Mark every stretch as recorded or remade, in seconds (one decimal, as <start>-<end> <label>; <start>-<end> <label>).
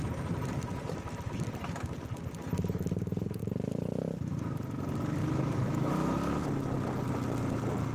0.0-5.2 recorded; 5.2-6.1 remade; 6.1-7.9 recorded